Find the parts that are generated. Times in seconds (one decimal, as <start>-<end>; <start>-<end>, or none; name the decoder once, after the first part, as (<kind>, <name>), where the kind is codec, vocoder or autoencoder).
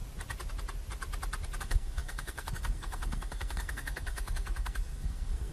1.6-5.5 (codec, SNAC)